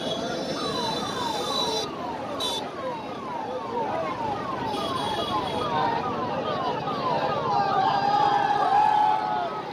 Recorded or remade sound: recorded